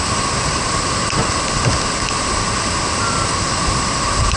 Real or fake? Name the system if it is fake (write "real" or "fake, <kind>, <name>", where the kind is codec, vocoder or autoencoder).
fake, vocoder, BigVGAN v2